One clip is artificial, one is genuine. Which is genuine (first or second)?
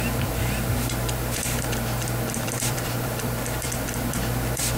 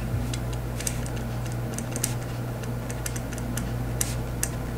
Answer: second